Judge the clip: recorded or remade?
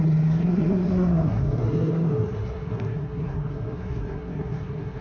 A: remade